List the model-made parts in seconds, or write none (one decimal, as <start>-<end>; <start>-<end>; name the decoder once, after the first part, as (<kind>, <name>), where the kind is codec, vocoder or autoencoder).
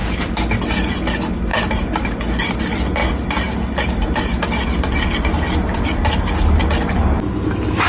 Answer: none